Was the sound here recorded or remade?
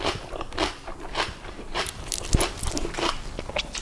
recorded